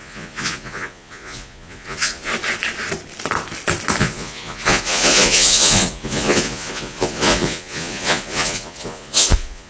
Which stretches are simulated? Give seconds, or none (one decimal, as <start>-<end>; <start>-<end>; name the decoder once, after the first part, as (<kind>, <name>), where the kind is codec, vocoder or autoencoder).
0.0-2.3 (vocoder, Vocos); 4.0-9.7